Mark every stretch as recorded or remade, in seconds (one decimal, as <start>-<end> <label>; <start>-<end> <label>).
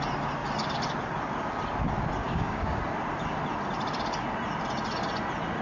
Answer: 0.0-2.2 recorded; 2.2-2.8 remade; 2.8-5.6 recorded